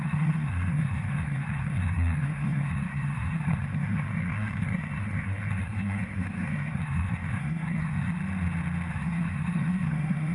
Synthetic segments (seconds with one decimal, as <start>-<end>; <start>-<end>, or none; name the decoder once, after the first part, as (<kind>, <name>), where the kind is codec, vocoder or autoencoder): 0.0-8.2 (codec, SNAC); 8.9-10.3